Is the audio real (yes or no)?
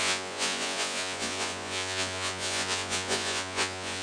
no